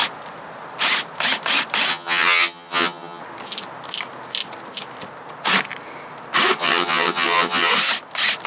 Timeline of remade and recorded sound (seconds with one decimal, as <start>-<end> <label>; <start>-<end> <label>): 0.0-1.9 recorded; 1.9-3.2 remade; 3.2-6.6 recorded; 6.6-7.7 remade; 7.7-8.5 recorded